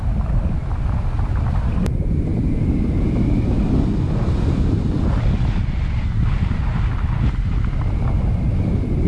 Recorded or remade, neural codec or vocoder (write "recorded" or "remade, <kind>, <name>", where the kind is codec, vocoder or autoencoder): recorded